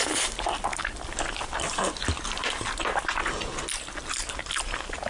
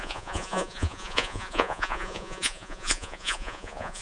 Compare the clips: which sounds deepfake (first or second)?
second